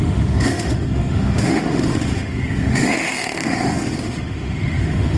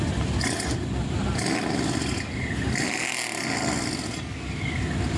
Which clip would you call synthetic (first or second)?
first